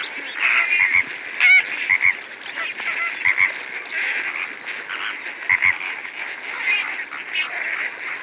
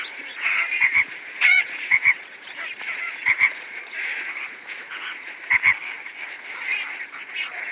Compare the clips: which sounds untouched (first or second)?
first